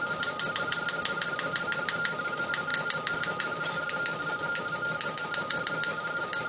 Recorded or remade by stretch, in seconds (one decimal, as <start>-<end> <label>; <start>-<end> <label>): 0.0-6.5 recorded